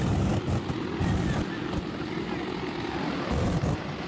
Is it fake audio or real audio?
real